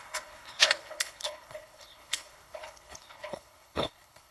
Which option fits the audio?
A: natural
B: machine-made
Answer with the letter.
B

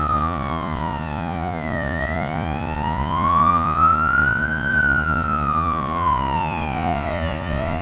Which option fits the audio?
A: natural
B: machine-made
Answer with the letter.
B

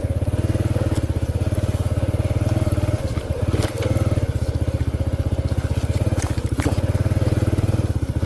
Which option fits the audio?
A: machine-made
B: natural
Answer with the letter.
B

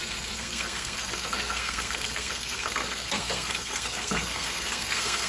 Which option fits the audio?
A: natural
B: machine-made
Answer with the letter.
B